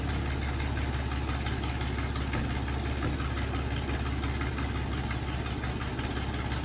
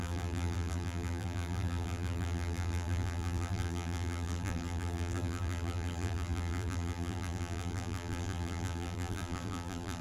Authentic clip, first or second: first